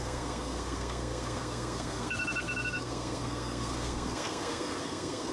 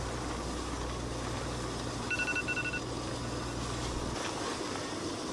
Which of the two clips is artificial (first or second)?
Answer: first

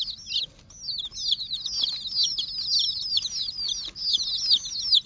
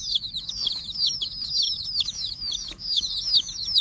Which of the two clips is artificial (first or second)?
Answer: second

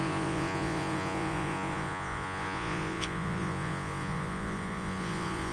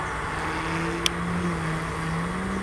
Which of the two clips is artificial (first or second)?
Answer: first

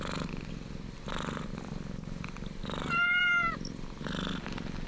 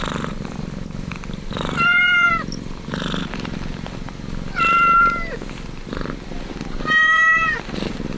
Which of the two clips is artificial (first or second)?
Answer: second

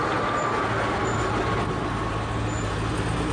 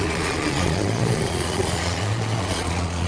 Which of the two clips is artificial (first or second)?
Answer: second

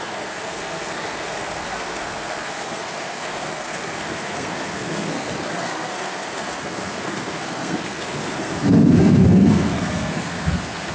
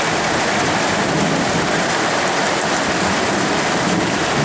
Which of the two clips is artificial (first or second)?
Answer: first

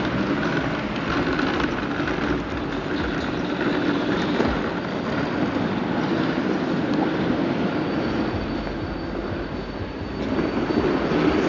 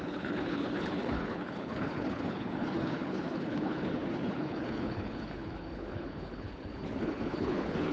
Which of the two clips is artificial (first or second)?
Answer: second